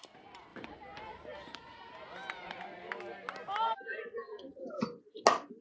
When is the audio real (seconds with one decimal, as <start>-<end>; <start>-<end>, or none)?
0.0-0.5; 1.9-3.9; 4.6-5.6